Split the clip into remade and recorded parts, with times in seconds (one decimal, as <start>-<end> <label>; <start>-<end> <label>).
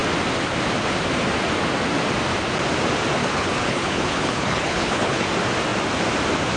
0.0-3.2 recorded; 3.2-5.3 remade; 5.3-6.6 recorded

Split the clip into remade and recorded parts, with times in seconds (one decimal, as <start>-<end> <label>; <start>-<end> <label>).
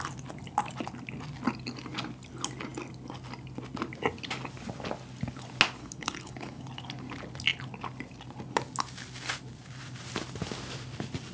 0.0-5.8 recorded; 5.8-6.7 remade; 6.7-11.3 recorded